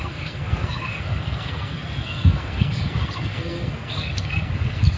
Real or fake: fake